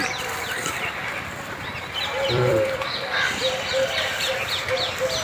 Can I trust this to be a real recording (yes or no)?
no